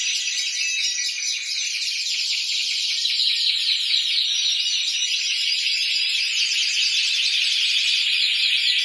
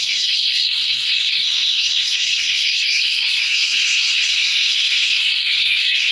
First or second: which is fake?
second